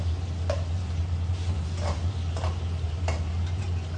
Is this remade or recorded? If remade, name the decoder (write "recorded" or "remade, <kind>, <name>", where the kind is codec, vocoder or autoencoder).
remade, vocoder, BigVGAN v2